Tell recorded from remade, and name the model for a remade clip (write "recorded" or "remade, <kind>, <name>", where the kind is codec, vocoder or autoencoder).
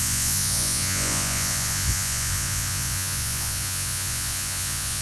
remade, vocoder, Vocos